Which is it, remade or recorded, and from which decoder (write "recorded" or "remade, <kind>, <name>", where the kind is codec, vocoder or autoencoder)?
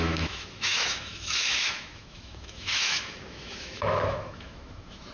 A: remade, autoencoder, DAC-VAE